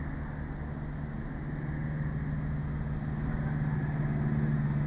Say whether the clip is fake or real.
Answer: real